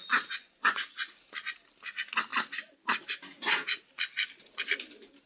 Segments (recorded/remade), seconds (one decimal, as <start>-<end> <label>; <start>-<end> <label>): 0.0-1.1 remade; 1.1-5.3 recorded